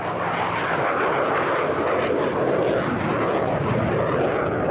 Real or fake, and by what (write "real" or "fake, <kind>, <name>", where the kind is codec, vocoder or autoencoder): real